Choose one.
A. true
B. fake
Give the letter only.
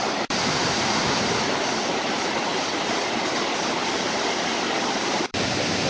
B